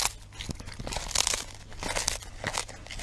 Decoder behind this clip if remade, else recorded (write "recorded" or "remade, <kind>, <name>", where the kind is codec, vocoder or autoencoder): recorded